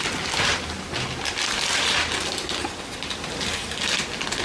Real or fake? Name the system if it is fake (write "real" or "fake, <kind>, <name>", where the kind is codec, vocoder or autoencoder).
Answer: fake, vocoder, BigVGAN v2